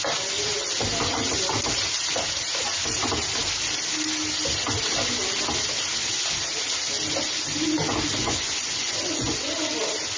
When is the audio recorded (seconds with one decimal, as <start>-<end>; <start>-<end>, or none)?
0.0-8.2; 9.5-10.2